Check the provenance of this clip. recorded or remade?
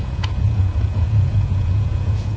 remade